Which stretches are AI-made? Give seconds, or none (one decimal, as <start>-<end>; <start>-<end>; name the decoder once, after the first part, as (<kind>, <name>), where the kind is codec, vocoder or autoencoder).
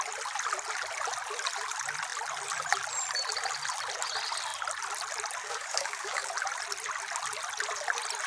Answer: 5.4-6.3 (codec, DAC)